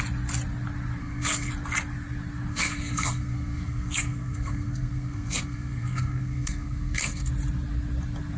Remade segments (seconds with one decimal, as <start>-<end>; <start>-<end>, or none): 1.0-1.5; 2.5-7.3